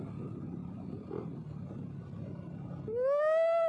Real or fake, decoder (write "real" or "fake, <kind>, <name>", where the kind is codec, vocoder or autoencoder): real